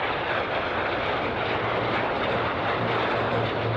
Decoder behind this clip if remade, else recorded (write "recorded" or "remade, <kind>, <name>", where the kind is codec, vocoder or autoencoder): recorded